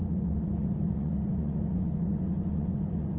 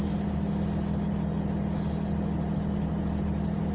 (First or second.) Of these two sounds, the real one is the second